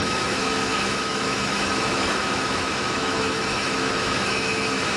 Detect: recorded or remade remade